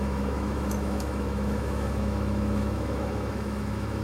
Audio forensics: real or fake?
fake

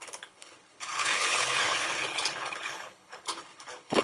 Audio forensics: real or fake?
fake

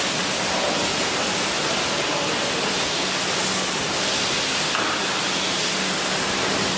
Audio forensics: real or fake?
real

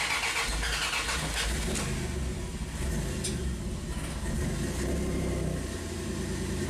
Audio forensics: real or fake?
real